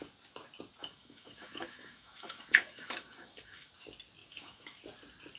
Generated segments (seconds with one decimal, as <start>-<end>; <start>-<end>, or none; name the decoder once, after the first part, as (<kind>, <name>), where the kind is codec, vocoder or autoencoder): 0.8-3.7 (autoencoder, DAC-VAE); 4.2-4.8